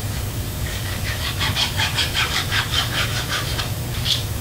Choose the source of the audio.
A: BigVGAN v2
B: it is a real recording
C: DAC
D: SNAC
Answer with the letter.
C